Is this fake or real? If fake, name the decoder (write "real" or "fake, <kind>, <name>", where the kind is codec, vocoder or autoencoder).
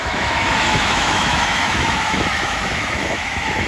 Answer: fake, autoencoder, DAC-VAE